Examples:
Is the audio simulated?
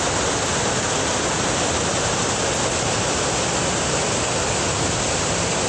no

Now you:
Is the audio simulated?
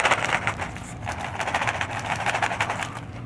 no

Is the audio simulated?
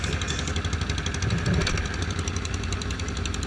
no